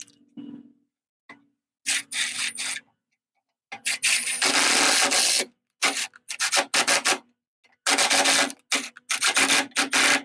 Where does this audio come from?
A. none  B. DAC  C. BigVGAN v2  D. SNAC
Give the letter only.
A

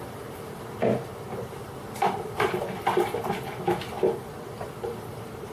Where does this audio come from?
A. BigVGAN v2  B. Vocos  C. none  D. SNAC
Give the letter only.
A